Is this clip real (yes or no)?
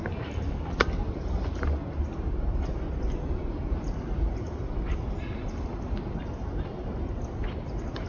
yes